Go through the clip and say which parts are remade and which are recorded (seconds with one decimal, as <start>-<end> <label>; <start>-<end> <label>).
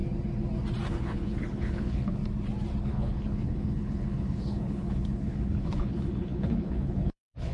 0.0-0.9 recorded; 0.9-2.2 remade; 2.2-2.8 recorded; 2.8-7.5 remade